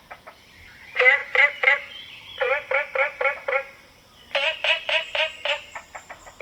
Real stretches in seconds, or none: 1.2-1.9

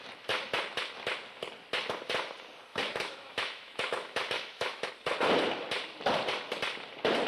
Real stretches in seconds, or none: 0.0-2.7; 4.9-7.3

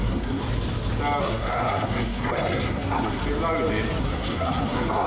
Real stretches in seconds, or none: 0.4-1.2; 3.2-4.0